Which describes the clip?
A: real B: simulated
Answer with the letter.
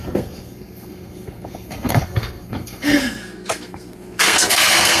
B